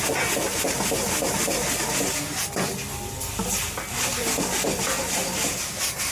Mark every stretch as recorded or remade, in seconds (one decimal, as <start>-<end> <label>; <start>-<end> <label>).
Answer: 0.0-6.1 recorded